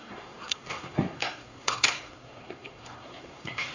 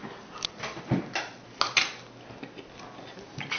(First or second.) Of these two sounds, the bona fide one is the second